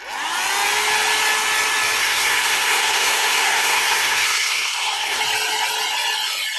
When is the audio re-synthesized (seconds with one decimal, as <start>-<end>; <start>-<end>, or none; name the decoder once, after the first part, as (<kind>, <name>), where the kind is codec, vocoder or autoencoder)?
2.0-5.2 (codec, SNAC)